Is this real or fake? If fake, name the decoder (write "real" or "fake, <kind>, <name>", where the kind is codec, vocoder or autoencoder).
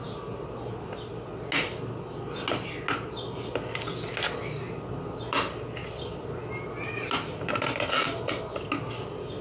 real